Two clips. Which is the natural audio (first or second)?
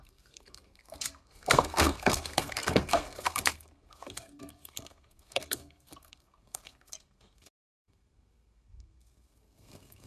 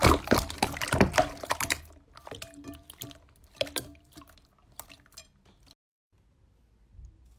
second